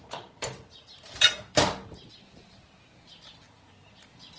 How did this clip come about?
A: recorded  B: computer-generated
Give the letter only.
A